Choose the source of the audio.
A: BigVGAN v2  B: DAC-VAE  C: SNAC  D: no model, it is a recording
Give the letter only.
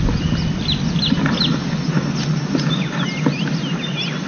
D